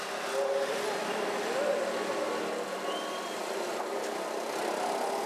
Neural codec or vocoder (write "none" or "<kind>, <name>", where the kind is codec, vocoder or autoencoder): none